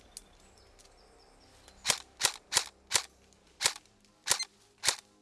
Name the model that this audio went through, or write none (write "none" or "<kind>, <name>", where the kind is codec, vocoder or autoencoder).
none